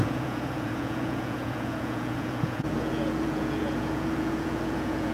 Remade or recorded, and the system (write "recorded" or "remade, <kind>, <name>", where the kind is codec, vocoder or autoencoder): remade, vocoder, Vocos